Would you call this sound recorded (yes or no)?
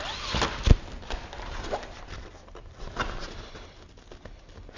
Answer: yes